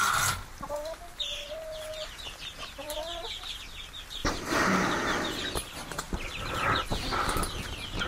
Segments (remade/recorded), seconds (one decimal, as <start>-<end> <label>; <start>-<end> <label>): 0.0-2.0 recorded; 2.0-3.6 remade; 3.6-4.2 recorded; 4.2-6.5 remade; 6.5-8.1 recorded